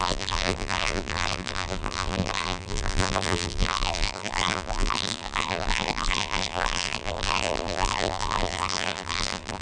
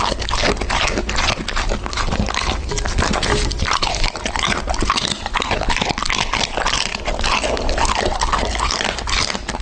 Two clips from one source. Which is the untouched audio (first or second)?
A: second